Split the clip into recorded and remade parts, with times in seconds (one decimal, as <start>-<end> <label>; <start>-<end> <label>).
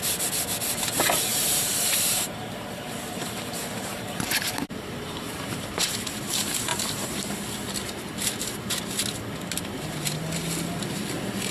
0.0-1.3 recorded; 1.3-6.2 remade; 6.2-6.7 recorded; 6.7-7.3 remade; 7.3-11.5 recorded